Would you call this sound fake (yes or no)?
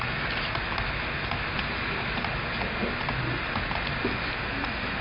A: no